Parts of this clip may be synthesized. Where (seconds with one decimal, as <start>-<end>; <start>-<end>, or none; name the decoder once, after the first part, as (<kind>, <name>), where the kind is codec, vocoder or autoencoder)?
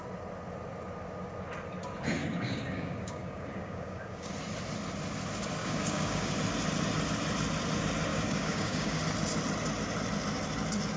2.2-4.3 (codec, DAC); 5.6-6.3; 8.1-9.0